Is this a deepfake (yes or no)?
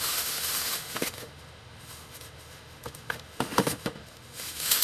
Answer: yes